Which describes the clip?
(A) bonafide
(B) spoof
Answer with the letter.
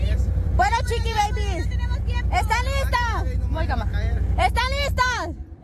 B